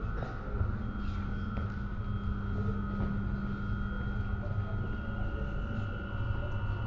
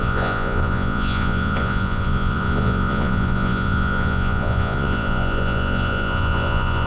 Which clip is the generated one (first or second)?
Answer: second